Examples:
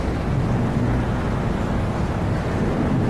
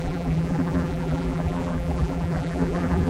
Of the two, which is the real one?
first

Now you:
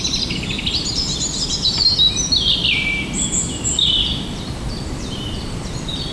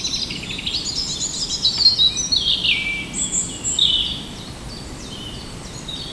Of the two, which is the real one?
second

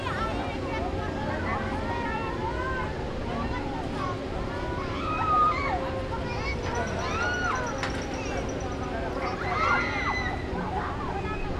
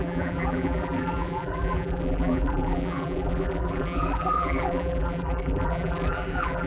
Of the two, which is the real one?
first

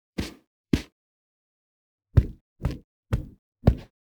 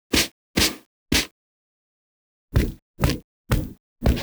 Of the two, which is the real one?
second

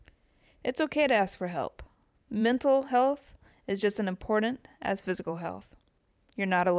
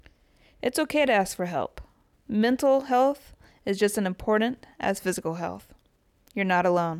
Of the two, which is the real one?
second